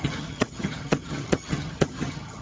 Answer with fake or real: fake